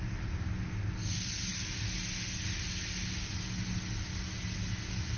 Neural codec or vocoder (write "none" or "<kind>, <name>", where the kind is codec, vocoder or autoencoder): none